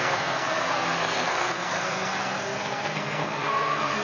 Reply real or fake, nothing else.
fake